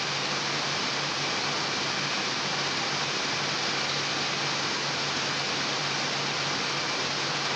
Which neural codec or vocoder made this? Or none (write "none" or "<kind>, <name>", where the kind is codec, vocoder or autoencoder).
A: none